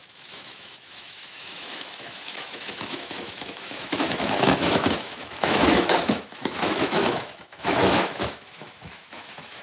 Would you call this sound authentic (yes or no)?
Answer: no